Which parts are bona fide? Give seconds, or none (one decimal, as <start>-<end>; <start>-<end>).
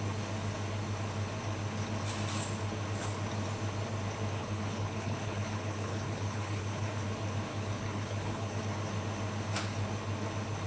0.0-4.4; 6.9-7.5; 8.6-10.7